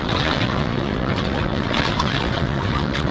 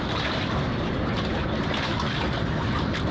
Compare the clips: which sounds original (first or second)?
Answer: second